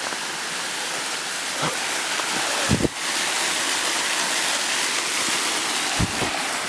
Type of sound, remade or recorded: recorded